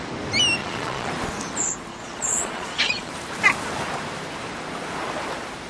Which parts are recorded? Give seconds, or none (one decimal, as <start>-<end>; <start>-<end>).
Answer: 0.0-0.6; 1.1-1.9; 3.1-5.7